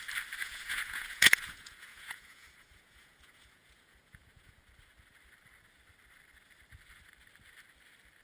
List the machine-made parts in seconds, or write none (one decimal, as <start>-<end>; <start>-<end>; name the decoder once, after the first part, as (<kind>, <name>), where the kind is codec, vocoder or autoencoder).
0.4-4.6 (vocoder, Vocos)